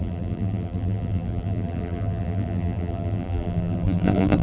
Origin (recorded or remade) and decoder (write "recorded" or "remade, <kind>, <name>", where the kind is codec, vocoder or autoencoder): remade, vocoder, BigVGAN v2